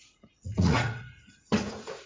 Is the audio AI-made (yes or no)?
yes